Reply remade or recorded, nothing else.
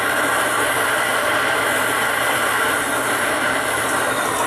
remade